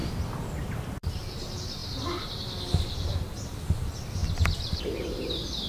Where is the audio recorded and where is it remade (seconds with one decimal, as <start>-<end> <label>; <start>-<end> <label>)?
0.0-1.0 recorded; 1.0-1.8 remade; 1.8-3.3 recorded; 3.3-4.2 remade; 4.2-5.3 recorded; 5.3-5.7 remade